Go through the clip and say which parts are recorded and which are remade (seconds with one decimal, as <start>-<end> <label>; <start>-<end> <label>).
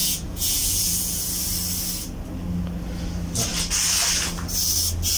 0.0-1.2 remade; 1.2-5.2 recorded